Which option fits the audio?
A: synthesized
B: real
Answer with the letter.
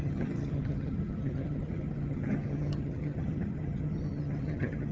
A